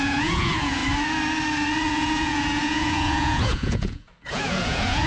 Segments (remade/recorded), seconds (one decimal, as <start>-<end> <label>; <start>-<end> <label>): 0.0-0.8 remade; 0.8-1.9 recorded; 1.9-5.1 remade

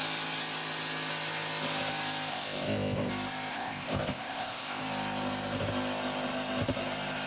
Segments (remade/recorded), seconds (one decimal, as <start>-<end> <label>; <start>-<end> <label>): 0.0-2.3 recorded; 2.3-3.1 remade; 3.1-3.5 recorded; 3.5-4.8 remade; 4.8-7.3 recorded